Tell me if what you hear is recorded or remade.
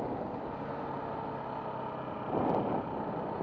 recorded